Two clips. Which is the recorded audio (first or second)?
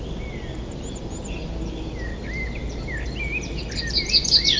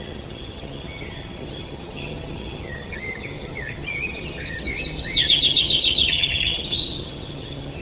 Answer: first